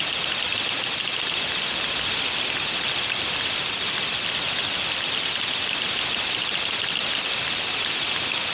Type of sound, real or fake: real